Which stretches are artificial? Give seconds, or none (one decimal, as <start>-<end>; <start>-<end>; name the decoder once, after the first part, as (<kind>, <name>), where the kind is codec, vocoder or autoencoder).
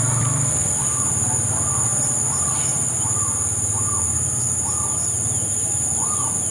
none